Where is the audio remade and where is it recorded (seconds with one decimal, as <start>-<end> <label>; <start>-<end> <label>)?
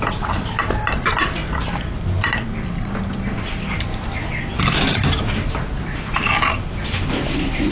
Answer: 0.0-1.4 recorded; 1.4-3.0 remade; 3.0-7.7 recorded